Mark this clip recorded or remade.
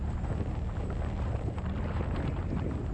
recorded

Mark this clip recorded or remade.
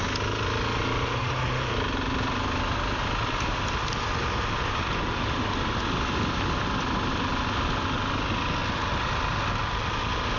recorded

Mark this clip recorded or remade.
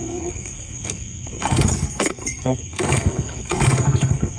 remade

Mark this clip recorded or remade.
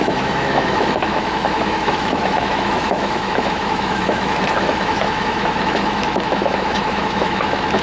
remade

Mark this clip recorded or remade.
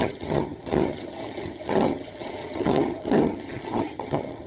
remade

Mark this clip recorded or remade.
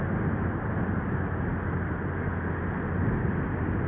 recorded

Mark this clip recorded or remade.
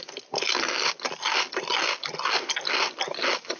recorded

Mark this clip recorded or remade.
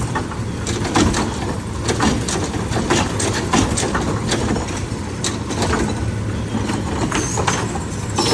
recorded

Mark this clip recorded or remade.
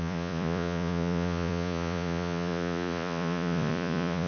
remade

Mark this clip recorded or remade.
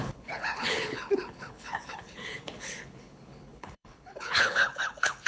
remade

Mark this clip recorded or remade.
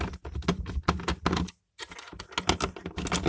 recorded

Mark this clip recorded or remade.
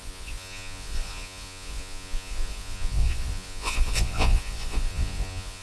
remade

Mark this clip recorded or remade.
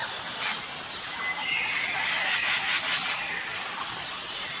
recorded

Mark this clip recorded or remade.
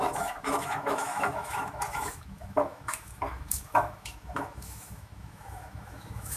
remade